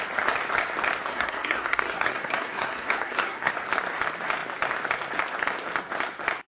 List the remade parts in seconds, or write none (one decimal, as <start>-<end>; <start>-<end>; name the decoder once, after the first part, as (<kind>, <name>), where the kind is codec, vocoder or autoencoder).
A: 1.1-3.5 (codec, SNAC)